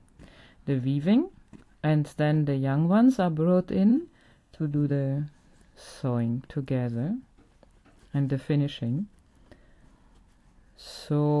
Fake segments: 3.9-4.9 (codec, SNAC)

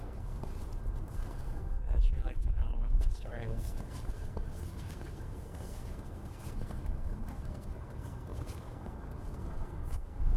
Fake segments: 0.0-0.5 (codec, SNAC); 1.0-10.4

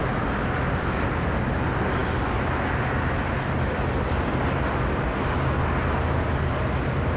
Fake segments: none

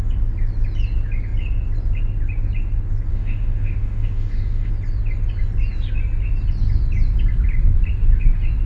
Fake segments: 3.1-4.7 (autoencoder, DAC-VAE)